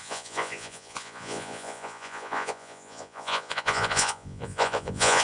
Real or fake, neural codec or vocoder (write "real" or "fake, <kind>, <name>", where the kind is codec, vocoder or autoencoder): fake, vocoder, Vocos